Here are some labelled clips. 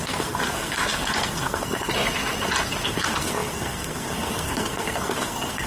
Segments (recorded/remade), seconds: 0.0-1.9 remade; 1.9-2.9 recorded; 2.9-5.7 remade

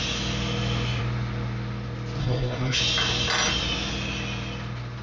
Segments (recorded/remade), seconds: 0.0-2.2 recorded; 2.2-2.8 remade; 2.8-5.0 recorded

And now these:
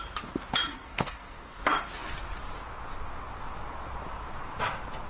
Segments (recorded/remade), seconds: 0.0-0.6 recorded; 0.6-1.6 remade; 1.6-5.1 recorded